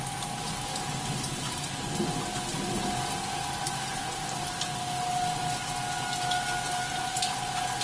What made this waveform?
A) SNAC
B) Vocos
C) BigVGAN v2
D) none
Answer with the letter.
D